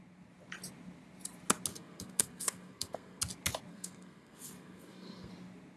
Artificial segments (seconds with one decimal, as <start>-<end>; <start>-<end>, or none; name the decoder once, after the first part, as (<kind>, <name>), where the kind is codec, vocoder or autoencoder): 1.7-3.2 (codec, SNAC); 3.7-5.3